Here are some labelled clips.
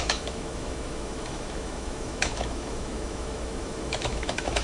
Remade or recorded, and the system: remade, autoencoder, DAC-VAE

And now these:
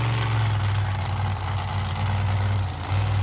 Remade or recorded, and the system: recorded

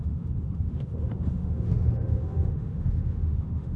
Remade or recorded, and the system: remade, autoencoder, DAC-VAE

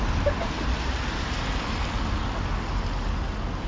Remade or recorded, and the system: recorded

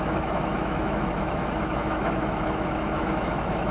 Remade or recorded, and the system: remade, autoencoder, DAC-VAE